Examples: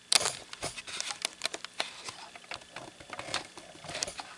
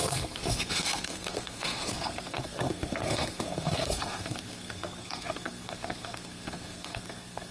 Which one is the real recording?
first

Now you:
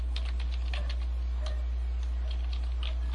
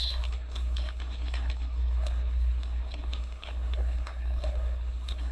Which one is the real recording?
first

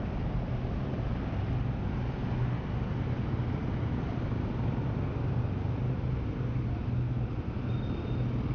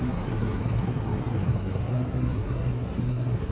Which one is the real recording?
first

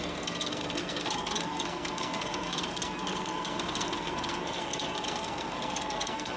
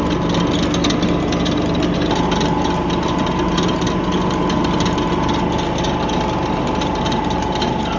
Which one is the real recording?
second